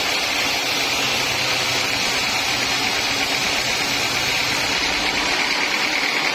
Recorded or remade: recorded